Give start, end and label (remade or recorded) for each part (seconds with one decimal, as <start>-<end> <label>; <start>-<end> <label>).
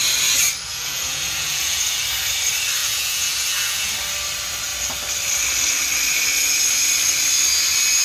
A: 0.0-0.7 recorded; 0.7-2.0 remade; 2.0-2.8 recorded; 2.8-3.9 remade; 3.9-8.0 recorded